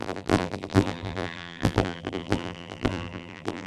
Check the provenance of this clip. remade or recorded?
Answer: remade